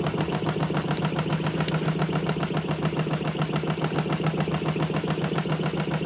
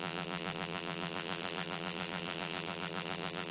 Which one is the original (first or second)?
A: first